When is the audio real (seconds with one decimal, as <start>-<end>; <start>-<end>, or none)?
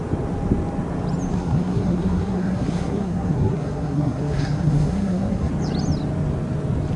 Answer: 0.0-1.3; 5.5-7.0